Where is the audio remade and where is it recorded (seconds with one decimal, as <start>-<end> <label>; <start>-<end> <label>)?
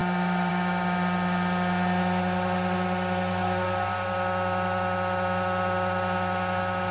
0.0-6.9 recorded